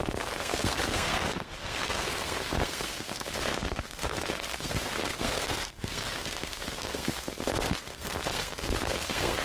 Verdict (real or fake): fake